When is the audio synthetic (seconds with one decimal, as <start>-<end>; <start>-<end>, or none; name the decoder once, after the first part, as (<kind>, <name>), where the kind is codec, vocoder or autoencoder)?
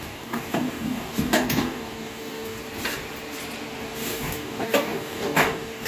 0.0-2.6 (codec, DAC); 3.8-5.9